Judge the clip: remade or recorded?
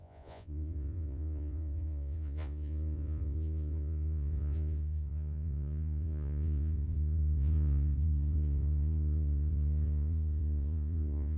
remade